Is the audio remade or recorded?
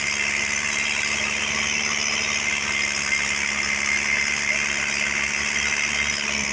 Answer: recorded